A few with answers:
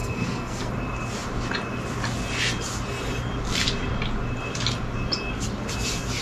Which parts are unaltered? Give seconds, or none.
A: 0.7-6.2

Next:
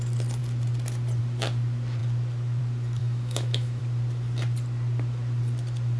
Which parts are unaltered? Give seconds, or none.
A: 0.0-3.0; 3.8-6.0

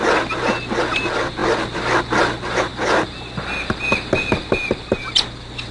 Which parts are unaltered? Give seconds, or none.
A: 0.0-5.7

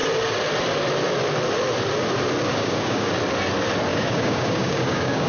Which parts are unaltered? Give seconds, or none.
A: 0.0-2.5; 3.1-3.9

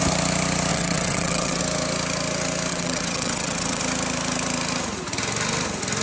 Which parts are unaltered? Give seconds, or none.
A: 0.0-0.7; 1.6-2.7; 3.8-6.0